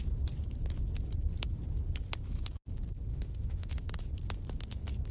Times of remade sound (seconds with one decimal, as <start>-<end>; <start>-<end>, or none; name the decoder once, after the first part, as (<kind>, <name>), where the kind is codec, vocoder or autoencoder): 3.1-3.7 (autoencoder, DAC-VAE)